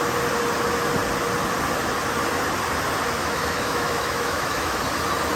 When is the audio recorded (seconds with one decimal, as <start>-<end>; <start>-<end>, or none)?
0.0-3.2; 4.8-5.4